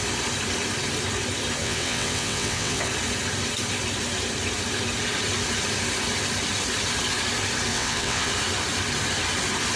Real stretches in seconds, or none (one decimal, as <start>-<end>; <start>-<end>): 0.0-1.6; 2.9-7.7; 8.3-9.8